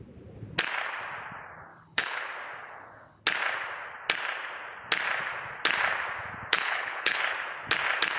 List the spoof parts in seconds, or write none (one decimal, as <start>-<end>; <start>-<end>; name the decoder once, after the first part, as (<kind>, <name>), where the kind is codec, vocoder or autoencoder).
1.7-2.2 (codec, HILCodec); 2.6-3.2; 6.5-7.2

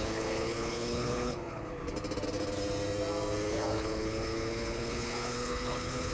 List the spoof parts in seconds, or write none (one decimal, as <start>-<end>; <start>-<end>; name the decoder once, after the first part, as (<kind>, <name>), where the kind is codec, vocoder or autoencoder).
0.0-1.8 (codec, HILCodec); 3.5-6.1

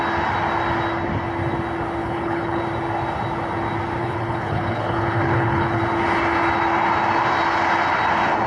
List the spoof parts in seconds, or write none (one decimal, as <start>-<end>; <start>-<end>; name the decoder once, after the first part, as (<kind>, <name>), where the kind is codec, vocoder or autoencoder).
2.0-2.6 (codec, HILCodec); 4.0-5.8

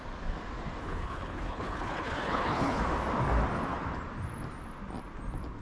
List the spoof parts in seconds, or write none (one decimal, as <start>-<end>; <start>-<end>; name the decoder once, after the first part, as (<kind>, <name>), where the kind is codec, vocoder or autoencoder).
0.8-2.8 (codec, HILCodec)

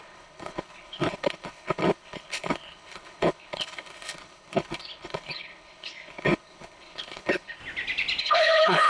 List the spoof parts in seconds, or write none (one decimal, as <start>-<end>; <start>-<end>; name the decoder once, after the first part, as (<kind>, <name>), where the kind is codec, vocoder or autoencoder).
0.0-7.6 (codec, HILCodec); 8.2-8.9

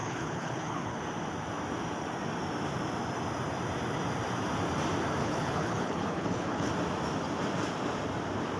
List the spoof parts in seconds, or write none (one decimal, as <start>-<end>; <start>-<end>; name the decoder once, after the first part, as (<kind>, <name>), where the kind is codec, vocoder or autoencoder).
0.0-1.0 (codec, HILCodec); 5.2-6.7

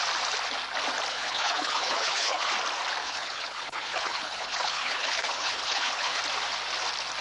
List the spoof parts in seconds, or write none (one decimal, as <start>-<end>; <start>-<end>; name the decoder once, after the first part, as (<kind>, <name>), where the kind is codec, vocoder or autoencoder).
1.1-2.5 (codec, HILCodec); 3.0-6.2